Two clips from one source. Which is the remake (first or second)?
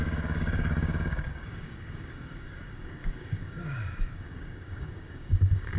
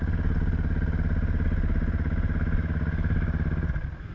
first